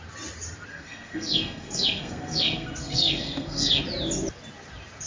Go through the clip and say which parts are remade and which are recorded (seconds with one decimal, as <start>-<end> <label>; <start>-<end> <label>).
0.0-0.7 recorded; 0.7-3.8 remade; 3.8-5.1 recorded